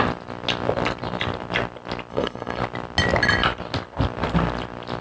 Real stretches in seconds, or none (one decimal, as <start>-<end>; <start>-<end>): 0.0-2.1; 2.6-5.0